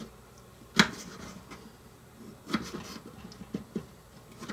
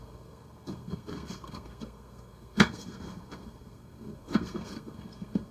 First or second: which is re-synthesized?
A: second